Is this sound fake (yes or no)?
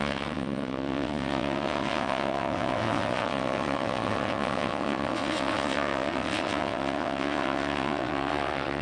yes